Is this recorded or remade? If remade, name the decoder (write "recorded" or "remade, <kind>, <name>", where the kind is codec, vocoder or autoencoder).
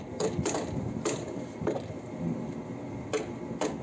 remade, vocoder, BigVGAN v2